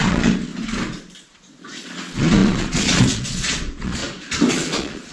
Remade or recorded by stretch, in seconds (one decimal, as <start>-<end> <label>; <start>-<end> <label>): 0.0-0.5 remade; 0.5-1.2 recorded; 1.2-4.0 remade; 4.0-4.5 recorded; 4.5-5.1 remade

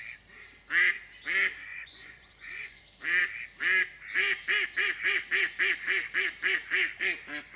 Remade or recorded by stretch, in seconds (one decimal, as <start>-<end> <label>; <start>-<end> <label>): 0.0-1.7 recorded; 1.7-2.8 remade; 2.8-7.6 recorded

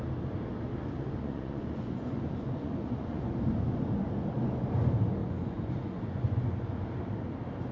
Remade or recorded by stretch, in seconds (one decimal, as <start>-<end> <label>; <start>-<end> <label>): 0.0-0.8 recorded; 0.8-3.3 remade; 3.3-5.2 recorded; 5.2-6.8 remade; 6.8-7.7 recorded